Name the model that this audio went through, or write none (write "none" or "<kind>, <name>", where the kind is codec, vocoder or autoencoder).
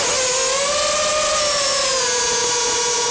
none